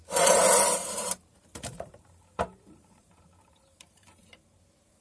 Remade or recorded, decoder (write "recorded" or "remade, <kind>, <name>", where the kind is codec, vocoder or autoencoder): remade, vocoder, BigVGAN v2